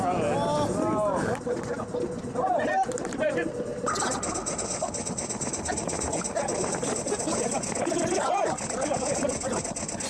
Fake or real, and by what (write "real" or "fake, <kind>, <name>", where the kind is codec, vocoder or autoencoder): real